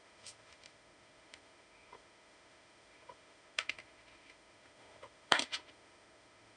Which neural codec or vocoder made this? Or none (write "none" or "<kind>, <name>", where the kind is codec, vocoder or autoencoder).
autoencoder, DAC-VAE